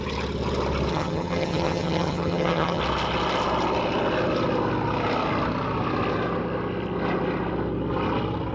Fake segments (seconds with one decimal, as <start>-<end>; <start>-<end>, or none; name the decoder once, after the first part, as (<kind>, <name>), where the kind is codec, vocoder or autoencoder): 0.9-2.8 (vocoder, HiFi-GAN)